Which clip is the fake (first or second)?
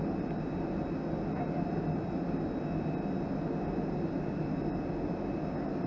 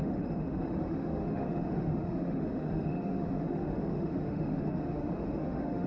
second